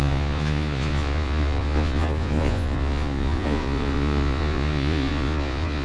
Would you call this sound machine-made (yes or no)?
yes